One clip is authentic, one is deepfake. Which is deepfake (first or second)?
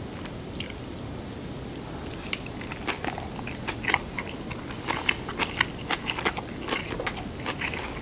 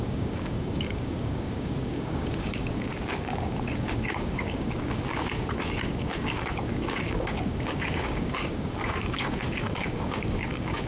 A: second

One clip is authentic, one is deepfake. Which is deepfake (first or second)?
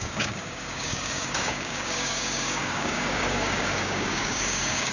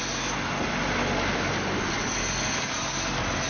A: first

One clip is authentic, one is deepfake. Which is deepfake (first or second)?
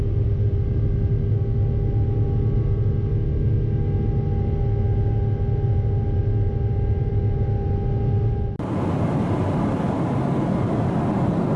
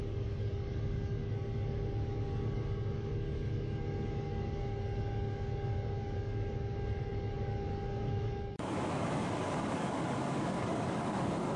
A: second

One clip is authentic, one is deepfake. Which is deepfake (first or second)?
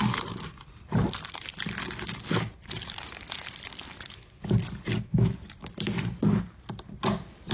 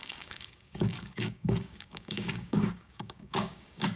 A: second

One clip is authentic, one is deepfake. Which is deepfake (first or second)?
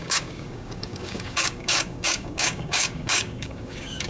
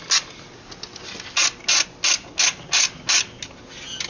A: first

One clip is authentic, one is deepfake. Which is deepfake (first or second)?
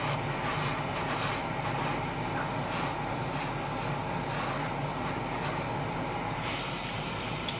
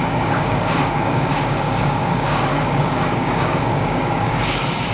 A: second